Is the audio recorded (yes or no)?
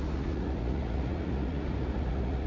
no